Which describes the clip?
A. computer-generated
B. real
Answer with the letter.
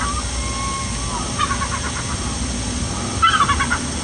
B